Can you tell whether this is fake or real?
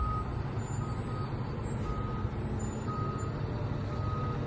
real